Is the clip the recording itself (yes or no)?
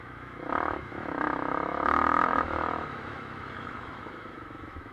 no